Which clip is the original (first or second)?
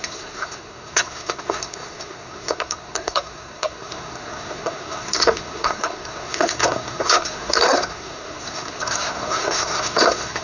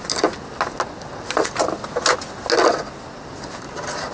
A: second